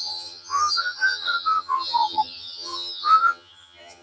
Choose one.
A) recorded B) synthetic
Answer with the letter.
B